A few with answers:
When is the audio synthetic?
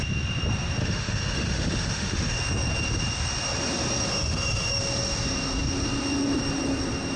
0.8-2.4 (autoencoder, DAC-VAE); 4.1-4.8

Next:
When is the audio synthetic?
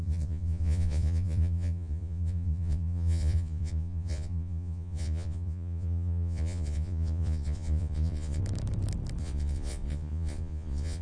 0.0-8.4 (vocoder, Vocos); 9.2-11.0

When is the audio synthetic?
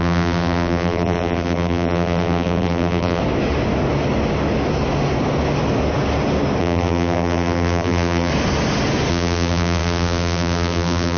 0.0-3.2 (vocoder, BigVGAN v2); 6.6-8.3; 9.1-11.2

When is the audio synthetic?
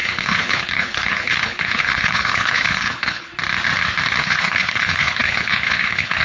0.0-3.3 (codec, HILCodec); 4.2-6.2